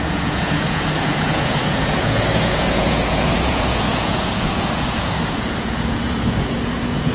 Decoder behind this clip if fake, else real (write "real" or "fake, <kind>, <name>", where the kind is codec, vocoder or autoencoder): fake, vocoder, Vocos